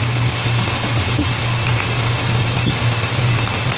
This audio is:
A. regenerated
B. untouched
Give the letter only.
B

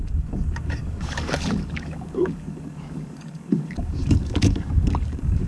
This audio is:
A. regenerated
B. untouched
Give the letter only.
A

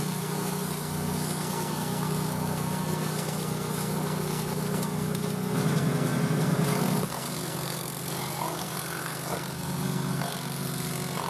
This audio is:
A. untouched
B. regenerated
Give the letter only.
B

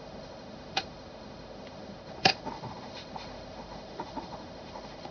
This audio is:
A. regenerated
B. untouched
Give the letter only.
A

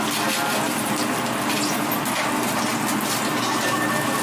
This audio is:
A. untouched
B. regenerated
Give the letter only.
A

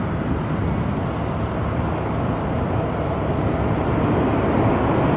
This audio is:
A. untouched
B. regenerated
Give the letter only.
A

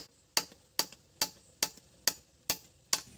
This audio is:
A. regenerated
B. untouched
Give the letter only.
B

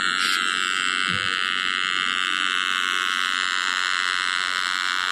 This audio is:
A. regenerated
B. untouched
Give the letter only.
A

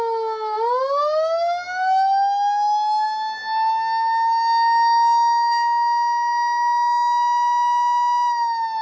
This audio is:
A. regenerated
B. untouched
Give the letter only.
B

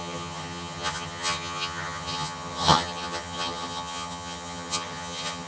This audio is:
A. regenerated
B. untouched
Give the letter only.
A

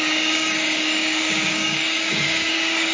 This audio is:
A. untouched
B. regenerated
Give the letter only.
B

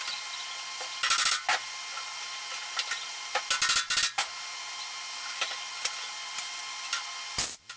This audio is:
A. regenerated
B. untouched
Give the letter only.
B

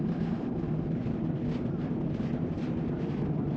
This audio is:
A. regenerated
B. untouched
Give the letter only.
B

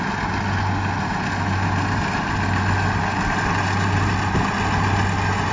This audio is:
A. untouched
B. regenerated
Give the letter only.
A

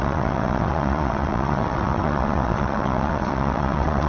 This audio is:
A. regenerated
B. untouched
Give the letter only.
A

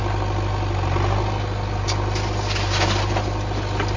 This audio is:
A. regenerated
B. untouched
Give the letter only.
B